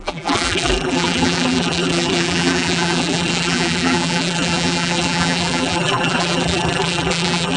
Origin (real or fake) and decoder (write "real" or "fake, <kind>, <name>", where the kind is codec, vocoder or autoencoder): fake, vocoder, BigVGAN v2